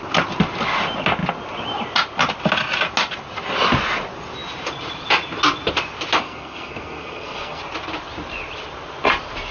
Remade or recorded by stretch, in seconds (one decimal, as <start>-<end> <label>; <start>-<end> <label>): 0.0-6.2 recorded; 6.2-7.6 remade; 7.6-9.5 recorded